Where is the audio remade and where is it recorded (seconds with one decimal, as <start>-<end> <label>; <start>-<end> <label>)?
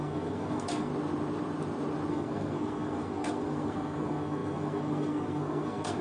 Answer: 0.0-0.9 remade; 0.9-2.1 recorded; 2.1-6.0 remade